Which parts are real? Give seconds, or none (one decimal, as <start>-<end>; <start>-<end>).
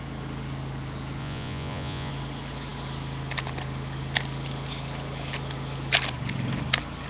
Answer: 0.0-1.2; 2.1-7.1